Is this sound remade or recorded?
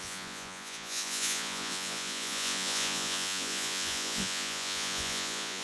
remade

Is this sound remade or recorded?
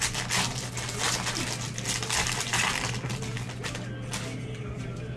recorded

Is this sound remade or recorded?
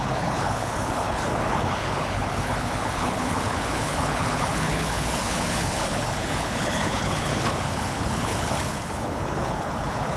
remade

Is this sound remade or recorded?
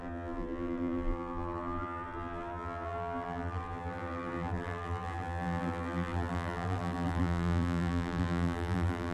remade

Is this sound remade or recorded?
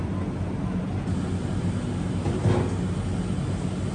recorded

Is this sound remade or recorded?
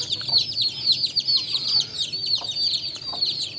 recorded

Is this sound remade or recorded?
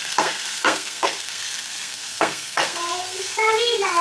remade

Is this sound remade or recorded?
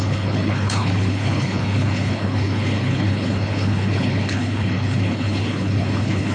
remade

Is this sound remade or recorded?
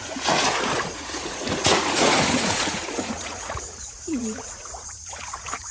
remade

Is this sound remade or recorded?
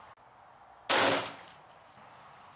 recorded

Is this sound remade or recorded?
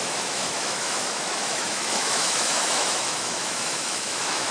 remade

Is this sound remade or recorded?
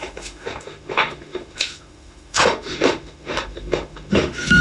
remade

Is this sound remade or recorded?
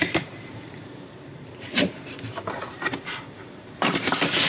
remade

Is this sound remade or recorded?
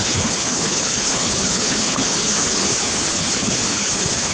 remade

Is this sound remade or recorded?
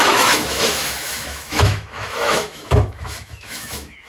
remade